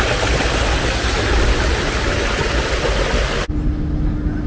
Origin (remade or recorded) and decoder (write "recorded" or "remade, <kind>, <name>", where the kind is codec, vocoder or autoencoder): recorded